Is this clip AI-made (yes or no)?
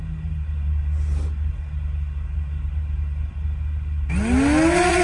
no